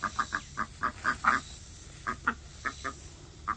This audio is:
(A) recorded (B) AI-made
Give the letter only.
A